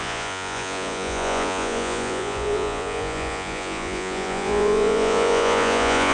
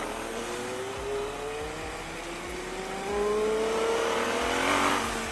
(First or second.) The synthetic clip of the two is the first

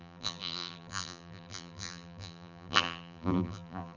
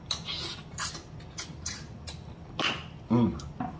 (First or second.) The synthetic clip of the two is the first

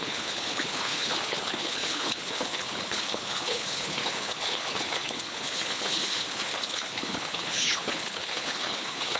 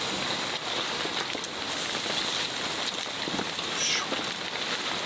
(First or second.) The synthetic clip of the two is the first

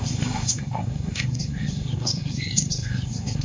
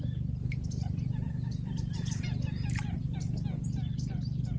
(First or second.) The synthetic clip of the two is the first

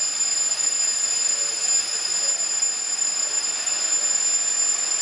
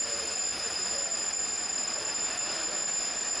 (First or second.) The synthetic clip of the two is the second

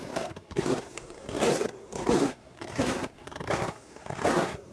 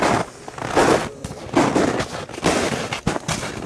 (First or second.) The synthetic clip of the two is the first